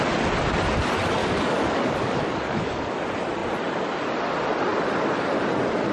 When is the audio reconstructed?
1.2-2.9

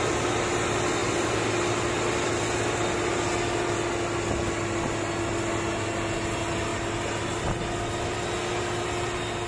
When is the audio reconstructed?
none

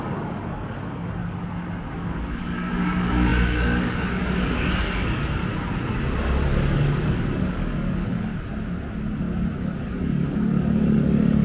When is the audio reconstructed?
0.0-1.2; 1.9-5.4; 6.7-8.3; 9.7-11.4

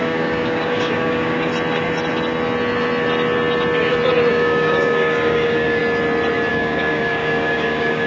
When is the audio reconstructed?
0.0-1.5; 4.3-5.8; 6.5-8.1

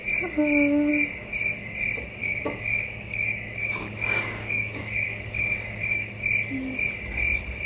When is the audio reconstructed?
2.2-6.1

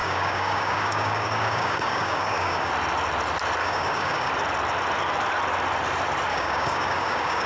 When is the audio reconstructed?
0.0-2.7; 3.6-4.3; 6.3-7.5

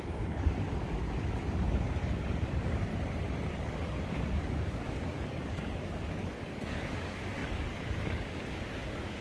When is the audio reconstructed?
0.0-2.9; 3.5-9.2

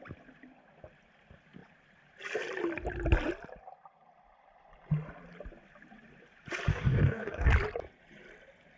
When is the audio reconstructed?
6.7-7.5